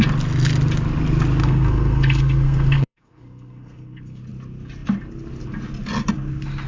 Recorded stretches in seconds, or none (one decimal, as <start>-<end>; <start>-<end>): 0.0-1.4; 4.2-6.7